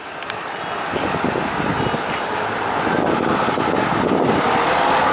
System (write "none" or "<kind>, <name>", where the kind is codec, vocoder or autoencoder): none